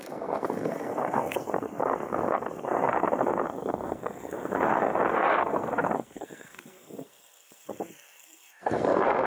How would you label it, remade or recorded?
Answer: remade